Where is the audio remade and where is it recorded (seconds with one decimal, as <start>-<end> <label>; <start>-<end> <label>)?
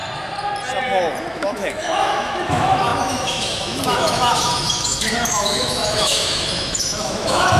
0.0-1.2 recorded; 1.2-7.6 remade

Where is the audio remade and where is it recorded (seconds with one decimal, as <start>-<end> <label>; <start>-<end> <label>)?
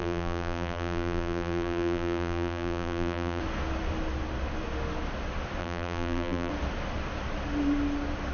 0.0-3.4 remade; 3.4-5.6 recorded; 5.6-6.5 remade; 6.5-8.3 recorded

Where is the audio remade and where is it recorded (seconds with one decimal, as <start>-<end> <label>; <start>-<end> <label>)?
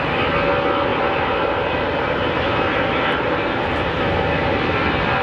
0.0-0.9 recorded; 0.9-4.0 remade; 4.0-5.2 recorded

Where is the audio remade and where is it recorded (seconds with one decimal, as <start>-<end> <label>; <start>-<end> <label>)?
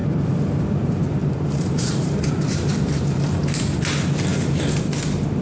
0.0-0.6 remade; 0.6-1.2 recorded; 1.2-2.3 remade; 2.3-5.4 recorded